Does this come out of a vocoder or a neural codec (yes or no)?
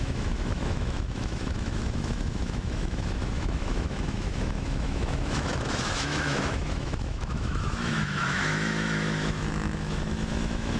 yes